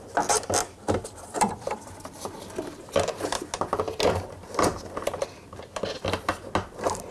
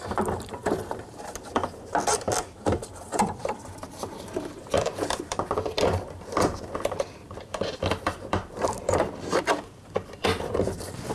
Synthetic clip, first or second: second